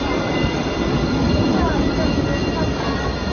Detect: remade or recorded recorded